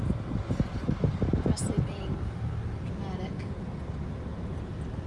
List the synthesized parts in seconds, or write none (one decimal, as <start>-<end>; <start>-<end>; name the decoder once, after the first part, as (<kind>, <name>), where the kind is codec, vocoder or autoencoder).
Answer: none